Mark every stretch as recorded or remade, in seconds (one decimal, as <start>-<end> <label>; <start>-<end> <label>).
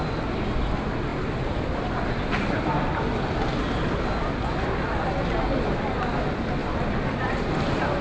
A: 0.0-1.1 recorded; 1.1-3.0 remade; 3.0-6.6 recorded; 6.6-7.3 remade; 7.3-8.0 recorded